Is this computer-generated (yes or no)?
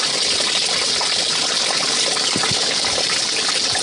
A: no